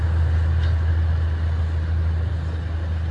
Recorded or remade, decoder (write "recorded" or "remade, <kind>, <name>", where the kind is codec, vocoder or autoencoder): recorded